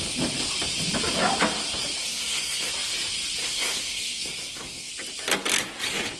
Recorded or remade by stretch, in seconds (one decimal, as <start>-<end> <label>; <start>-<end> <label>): 0.0-2.0 recorded; 2.0-2.7 remade; 2.7-3.4 recorded; 3.4-4.9 remade; 4.9-6.2 recorded